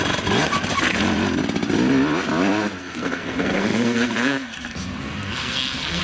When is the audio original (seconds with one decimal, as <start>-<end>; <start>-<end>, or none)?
0.0-2.8